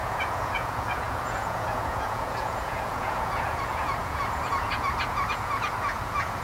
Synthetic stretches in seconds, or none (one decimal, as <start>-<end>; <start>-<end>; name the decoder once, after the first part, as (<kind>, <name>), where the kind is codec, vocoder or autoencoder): 0.0-6.4 (vocoder, Vocos)